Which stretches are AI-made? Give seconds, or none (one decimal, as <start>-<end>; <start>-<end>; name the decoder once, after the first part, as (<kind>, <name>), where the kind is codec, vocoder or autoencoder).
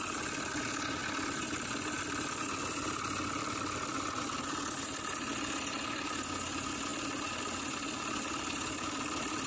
none